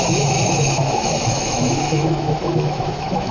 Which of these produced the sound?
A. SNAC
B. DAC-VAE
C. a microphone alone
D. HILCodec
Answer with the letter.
B